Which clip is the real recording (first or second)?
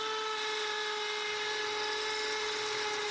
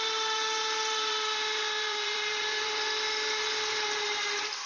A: first